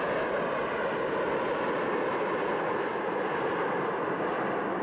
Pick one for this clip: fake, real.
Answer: real